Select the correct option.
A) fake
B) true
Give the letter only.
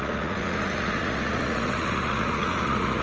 A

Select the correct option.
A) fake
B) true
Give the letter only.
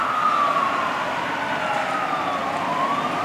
B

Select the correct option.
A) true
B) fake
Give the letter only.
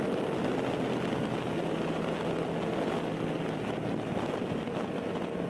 A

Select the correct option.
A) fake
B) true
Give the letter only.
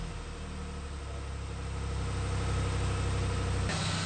B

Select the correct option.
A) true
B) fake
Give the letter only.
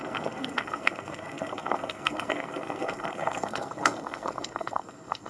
B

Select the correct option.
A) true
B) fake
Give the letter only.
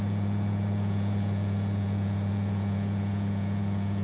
B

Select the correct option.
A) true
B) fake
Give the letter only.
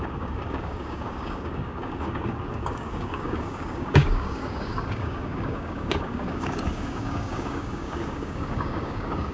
B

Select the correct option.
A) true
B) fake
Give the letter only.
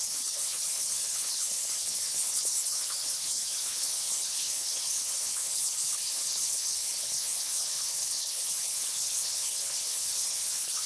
B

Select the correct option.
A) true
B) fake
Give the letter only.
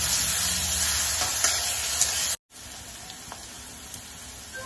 A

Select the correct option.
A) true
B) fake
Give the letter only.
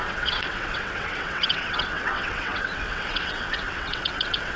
B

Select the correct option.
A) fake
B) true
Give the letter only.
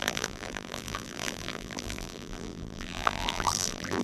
A